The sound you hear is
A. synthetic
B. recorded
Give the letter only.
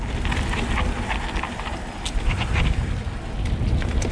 B